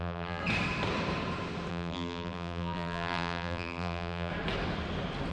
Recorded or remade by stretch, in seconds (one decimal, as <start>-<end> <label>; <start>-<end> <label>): 0.0-0.4 remade; 0.4-1.7 recorded; 1.7-4.3 remade; 4.3-5.3 recorded

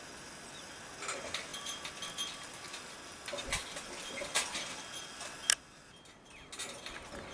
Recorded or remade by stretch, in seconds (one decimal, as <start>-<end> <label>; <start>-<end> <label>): 0.0-3.6 recorded; 3.6-4.3 remade; 4.3-7.3 recorded